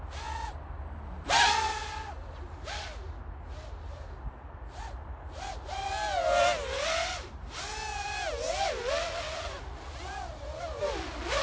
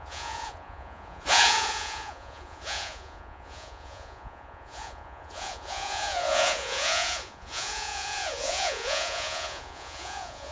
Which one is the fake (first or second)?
second